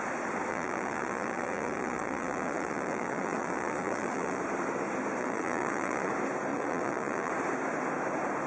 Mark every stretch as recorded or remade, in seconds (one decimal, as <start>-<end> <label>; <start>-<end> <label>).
0.0-0.5 recorded; 0.5-4.4 remade; 4.4-5.2 recorded; 5.2-6.1 remade; 6.1-6.5 recorded; 6.5-7.3 remade; 7.3-8.5 recorded